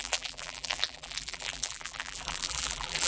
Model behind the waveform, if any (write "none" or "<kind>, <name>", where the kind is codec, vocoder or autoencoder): vocoder, BigVGAN v2